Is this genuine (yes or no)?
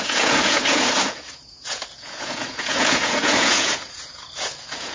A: no